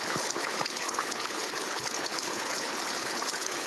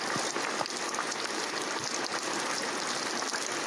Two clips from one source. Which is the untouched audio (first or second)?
second